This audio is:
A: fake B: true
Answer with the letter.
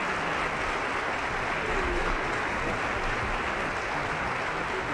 B